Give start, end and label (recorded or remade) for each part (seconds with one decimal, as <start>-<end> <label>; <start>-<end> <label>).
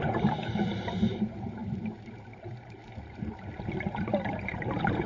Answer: 0.0-1.6 remade; 1.6-2.4 recorded; 2.4-2.8 remade; 2.8-3.8 recorded; 3.8-5.1 remade